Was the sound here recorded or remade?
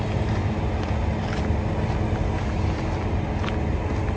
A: recorded